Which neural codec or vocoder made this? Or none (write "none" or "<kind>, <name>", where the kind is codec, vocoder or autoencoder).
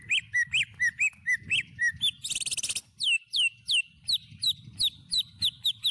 none